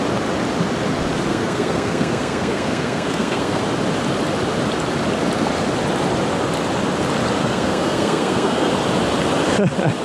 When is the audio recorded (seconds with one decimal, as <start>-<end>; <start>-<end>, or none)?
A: 0.0-1.3; 3.6-7.4; 8.7-10.0